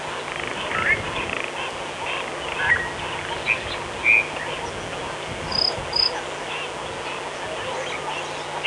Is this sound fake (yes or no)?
no